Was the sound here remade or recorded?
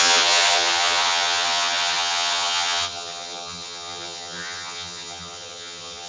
remade